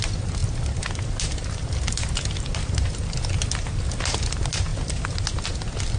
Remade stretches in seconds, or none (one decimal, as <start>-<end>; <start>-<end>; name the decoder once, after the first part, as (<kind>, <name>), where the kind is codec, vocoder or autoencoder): none